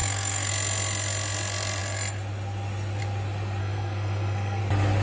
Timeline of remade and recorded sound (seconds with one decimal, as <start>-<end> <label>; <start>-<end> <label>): 0.0-0.5 remade; 0.5-3.6 recorded; 3.6-4.6 remade; 4.6-5.0 recorded